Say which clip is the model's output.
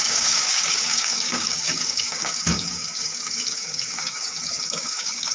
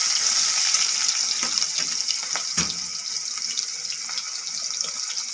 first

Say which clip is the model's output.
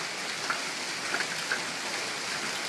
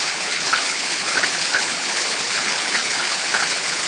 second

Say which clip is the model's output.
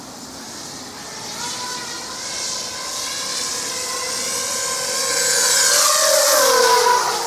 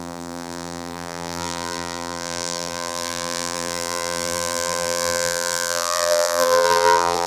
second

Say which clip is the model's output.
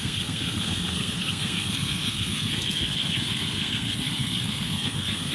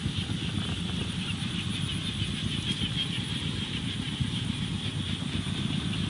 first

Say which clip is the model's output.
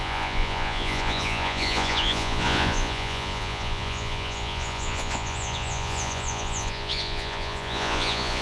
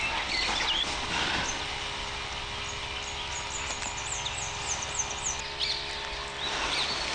first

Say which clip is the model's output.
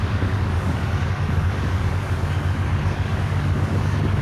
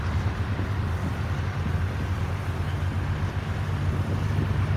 first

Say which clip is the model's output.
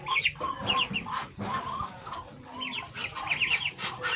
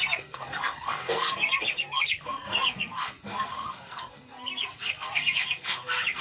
second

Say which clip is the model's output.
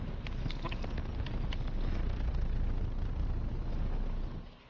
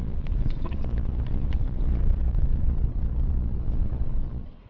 second